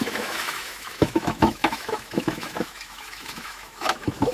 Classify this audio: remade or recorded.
remade